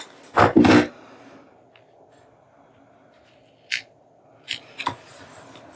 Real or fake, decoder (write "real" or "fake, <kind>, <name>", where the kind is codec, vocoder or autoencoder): real